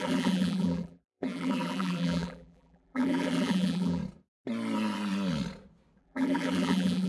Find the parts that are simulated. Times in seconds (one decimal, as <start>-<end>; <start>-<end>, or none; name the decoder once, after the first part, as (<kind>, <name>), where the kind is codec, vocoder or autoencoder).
0.0-4.0 (vocoder, BigVGAN v2); 6.0-7.1